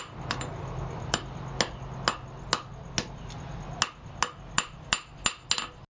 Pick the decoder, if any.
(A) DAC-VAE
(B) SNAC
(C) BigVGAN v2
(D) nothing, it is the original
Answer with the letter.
D